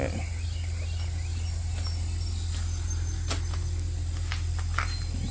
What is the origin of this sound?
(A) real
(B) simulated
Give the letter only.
A